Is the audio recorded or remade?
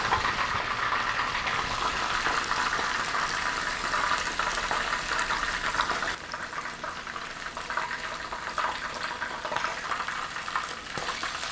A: recorded